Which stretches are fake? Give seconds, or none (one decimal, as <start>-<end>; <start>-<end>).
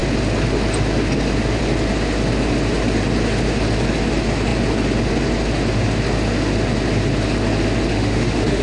7.9-8.6